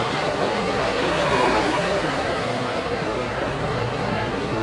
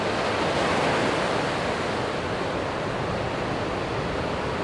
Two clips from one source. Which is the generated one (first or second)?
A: first